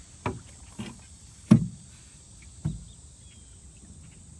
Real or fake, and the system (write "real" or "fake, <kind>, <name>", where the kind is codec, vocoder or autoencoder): real